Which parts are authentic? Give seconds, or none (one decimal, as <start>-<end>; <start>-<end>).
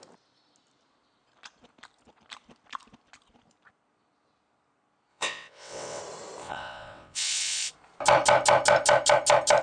0.0-5.1; 6.0-6.4; 7.7-9.6